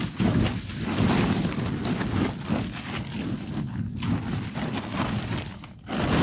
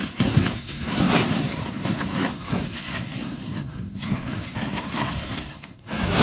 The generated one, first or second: second